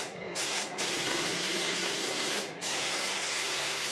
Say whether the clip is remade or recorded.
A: remade